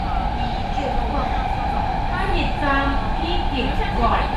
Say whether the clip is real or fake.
real